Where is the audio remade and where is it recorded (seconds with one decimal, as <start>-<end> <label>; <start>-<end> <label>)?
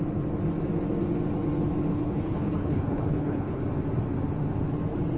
0.0-1.9 recorded; 1.9-3.6 remade; 3.6-5.2 recorded